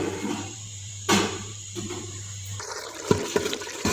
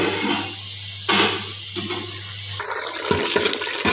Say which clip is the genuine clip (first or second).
second